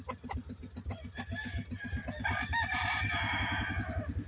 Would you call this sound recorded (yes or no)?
yes